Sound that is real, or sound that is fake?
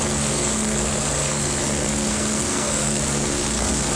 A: fake